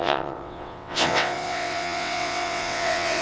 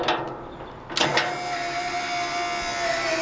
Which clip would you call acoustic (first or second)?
second